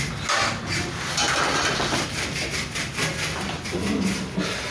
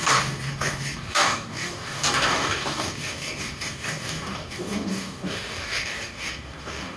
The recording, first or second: first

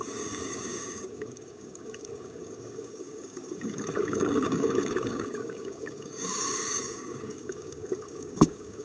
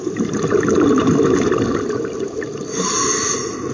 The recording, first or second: second